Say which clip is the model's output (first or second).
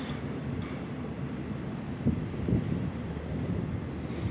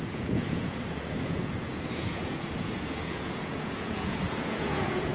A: second